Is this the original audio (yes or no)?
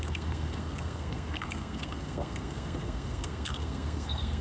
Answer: no